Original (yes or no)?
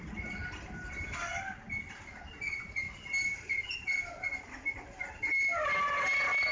yes